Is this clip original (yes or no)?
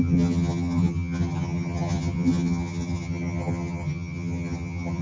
no